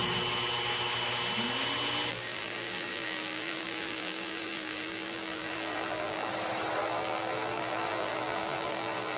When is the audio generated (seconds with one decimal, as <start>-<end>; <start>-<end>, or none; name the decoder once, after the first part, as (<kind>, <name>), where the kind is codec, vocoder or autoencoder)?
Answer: 2.1-6.3 (vocoder, BigVGAN v2); 6.8-9.2